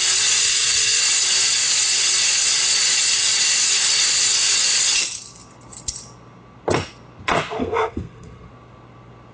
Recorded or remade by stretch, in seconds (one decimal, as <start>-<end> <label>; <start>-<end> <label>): 0.0-0.4 recorded; 0.4-1.0 remade; 1.0-7.6 recorded; 7.6-8.5 remade; 8.5-9.3 recorded

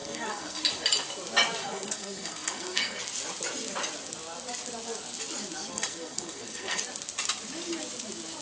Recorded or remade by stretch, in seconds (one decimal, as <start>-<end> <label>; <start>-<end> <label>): 0.0-0.6 remade; 0.6-1.6 recorded; 1.6-3.0 remade; 3.0-5.7 recorded; 5.7-6.8 remade; 6.8-8.4 recorded

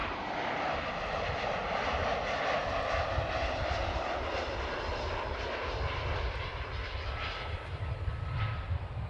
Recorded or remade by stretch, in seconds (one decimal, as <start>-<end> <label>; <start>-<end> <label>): 0.0-9.1 recorded

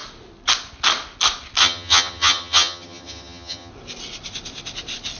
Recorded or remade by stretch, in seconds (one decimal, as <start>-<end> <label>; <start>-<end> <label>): 0.0-1.6 recorded; 1.6-3.7 remade; 3.7-5.2 recorded

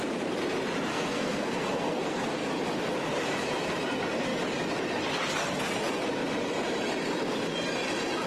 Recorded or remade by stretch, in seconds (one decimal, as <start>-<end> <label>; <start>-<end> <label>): 0.0-0.9 recorded; 0.9-2.5 remade; 2.5-8.3 recorded

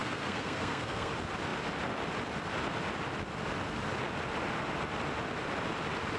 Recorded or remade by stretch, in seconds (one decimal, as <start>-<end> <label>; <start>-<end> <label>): 0.0-1.1 remade; 1.1-6.2 recorded

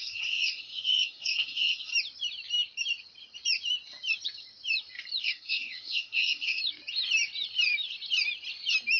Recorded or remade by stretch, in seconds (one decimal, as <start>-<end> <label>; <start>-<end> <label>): 0.0-1.9 remade; 1.9-5.2 recorded; 5.2-6.6 remade; 6.6-9.0 recorded